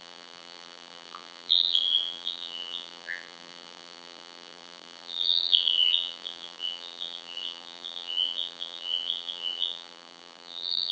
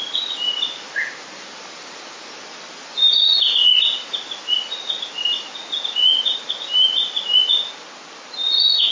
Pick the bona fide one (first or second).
second